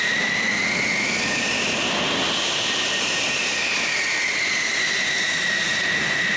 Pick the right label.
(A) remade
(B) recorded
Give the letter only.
B